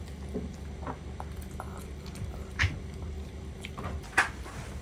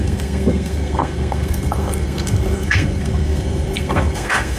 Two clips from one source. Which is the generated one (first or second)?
second